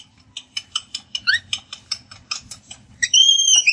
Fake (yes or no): no